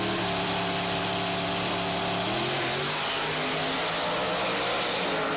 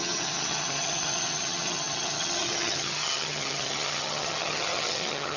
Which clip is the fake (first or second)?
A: second